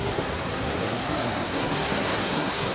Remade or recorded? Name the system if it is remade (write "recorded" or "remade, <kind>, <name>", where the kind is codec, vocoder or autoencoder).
remade, codec, SNAC